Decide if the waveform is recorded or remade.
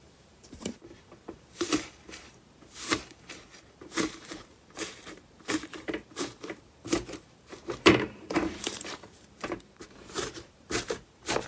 remade